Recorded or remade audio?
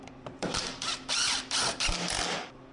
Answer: remade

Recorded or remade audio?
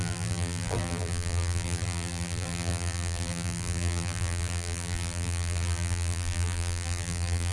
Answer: remade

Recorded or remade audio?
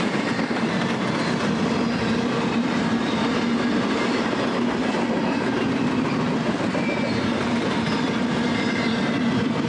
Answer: remade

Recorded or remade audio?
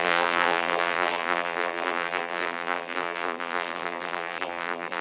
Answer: remade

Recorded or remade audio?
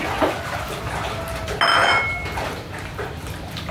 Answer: recorded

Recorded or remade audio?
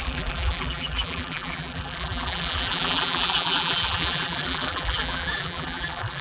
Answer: remade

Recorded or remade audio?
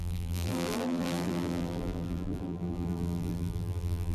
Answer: remade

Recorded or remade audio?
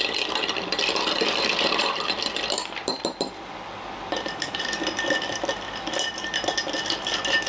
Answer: remade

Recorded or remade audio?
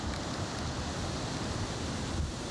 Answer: recorded